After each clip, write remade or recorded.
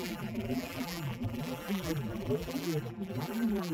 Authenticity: remade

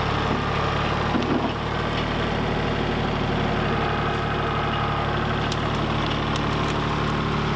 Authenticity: recorded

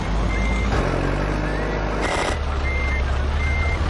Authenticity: recorded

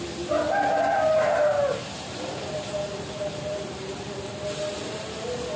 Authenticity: recorded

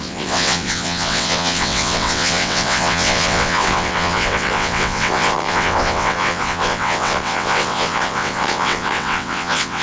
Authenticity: remade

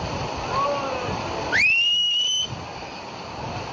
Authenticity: recorded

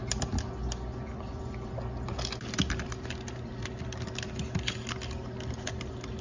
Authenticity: recorded